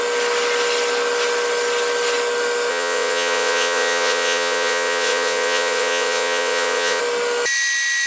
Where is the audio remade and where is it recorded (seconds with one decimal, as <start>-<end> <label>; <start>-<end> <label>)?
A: 0.0-2.7 recorded; 2.7-7.0 remade; 7.0-8.1 recorded